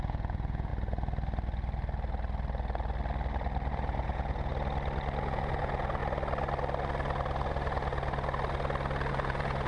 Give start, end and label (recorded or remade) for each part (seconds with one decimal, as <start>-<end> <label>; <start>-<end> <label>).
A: 0.0-0.7 remade; 0.7-3.7 recorded; 3.7-4.5 remade; 4.5-5.2 recorded; 5.2-6.0 remade; 6.0-9.1 recorded; 9.1-9.7 remade